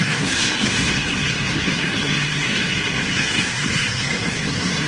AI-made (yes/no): yes